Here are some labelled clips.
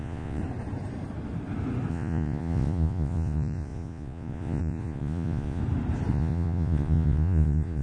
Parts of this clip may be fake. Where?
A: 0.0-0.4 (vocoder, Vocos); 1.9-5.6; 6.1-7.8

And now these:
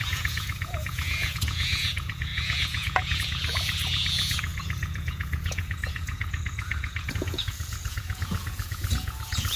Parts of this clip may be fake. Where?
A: 0.0-9.6 (vocoder, Vocos)